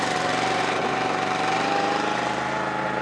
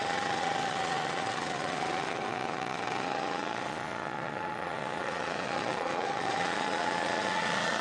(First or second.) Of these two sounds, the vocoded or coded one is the second